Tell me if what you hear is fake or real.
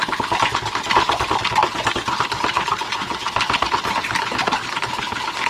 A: real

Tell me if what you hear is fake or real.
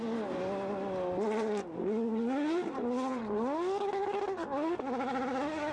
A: real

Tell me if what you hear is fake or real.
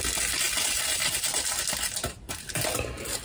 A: real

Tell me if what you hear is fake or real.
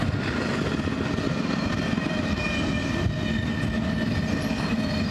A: real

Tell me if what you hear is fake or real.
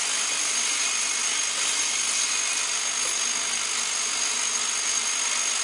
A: real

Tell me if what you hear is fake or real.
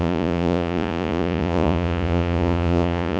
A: fake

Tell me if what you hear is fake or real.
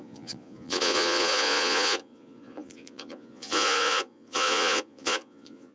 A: fake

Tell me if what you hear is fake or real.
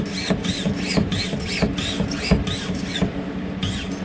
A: real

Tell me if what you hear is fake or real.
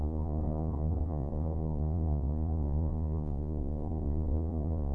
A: fake